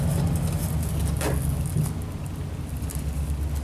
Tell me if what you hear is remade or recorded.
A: recorded